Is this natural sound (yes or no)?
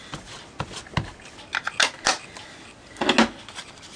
yes